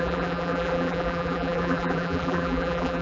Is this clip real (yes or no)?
no